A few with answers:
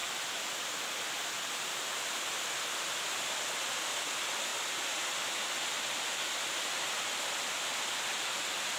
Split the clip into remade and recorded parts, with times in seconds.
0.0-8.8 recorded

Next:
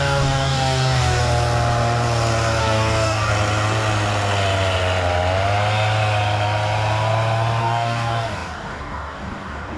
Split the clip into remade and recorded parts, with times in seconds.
0.0-1.2 remade; 1.2-2.6 recorded; 2.6-3.3 remade; 3.3-7.6 recorded; 7.6-9.8 remade

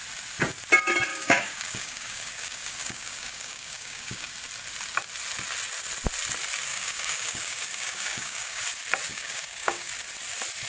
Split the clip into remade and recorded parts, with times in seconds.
0.0-1.1 recorded; 1.1-4.3 remade; 4.3-6.7 recorded; 6.7-8.6 remade; 8.6-9.1 recorded; 9.1-9.9 remade; 9.9-10.7 recorded

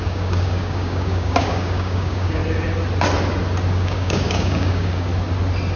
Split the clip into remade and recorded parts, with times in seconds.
0.0-2.4 remade; 2.4-3.7 recorded; 3.7-5.1 remade; 5.1-5.8 recorded

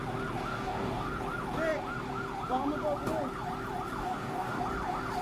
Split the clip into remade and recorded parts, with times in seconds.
0.0-0.5 recorded; 0.5-1.2 remade; 1.2-4.0 recorded; 4.0-4.6 remade; 4.6-5.2 recorded

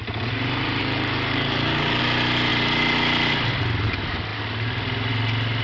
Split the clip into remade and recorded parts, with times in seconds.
0.0-0.8 recorded; 0.8-2.0 remade; 2.0-5.6 recorded

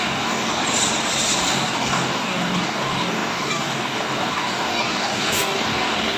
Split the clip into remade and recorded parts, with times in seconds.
0.0-0.6 remade; 0.6-1.4 recorded; 1.4-6.2 remade

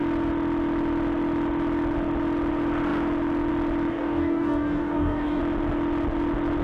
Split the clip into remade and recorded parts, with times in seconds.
0.0-3.9 recorded; 3.9-5.4 remade; 5.4-6.6 recorded